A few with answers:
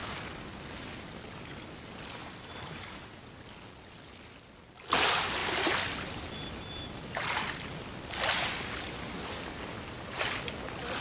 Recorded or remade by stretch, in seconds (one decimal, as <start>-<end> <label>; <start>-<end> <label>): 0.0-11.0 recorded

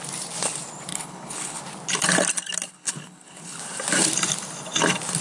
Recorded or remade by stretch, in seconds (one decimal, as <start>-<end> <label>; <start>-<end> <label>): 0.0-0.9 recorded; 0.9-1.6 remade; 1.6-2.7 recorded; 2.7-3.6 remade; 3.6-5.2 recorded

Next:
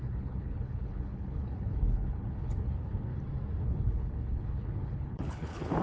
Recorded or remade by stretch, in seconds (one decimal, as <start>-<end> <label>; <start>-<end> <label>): 0.0-3.1 remade; 3.1-3.6 recorded; 3.6-5.8 remade